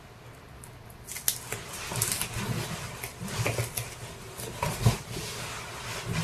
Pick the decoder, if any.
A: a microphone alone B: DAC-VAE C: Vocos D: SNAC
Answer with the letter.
A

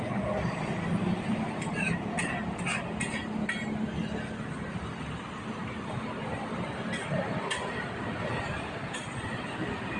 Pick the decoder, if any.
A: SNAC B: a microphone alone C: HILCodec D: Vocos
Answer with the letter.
B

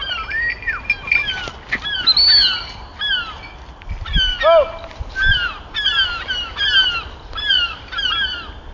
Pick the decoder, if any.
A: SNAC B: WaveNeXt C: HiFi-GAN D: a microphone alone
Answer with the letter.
D